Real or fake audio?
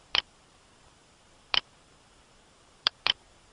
fake